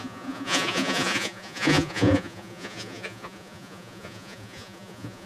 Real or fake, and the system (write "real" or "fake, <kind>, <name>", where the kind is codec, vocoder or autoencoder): fake, vocoder, Vocos